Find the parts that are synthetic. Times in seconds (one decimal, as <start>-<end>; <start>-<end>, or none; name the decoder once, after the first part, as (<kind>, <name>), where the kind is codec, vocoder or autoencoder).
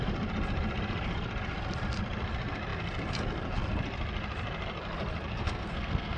5.4-6.2 (codec, SNAC)